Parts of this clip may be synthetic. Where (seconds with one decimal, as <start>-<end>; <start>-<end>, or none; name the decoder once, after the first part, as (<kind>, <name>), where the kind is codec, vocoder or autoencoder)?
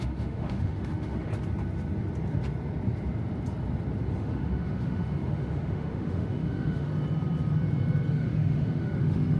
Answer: 0.0-1.3 (autoencoder, DAC-VAE); 4.1-6.9; 8.1-9.4